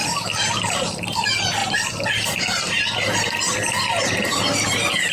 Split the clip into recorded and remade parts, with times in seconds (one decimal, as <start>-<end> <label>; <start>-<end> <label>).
0.0-5.1 recorded